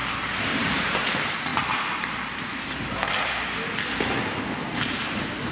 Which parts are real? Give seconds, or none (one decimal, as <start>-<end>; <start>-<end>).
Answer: 0.0-0.5; 2.8-5.0